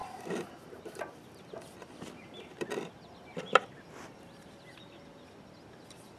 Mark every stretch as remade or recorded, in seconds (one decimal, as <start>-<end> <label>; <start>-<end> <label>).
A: 0.0-3.7 remade; 3.7-6.2 recorded